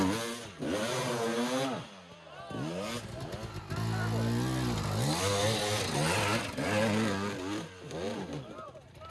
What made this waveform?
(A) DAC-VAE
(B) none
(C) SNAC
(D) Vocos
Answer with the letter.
B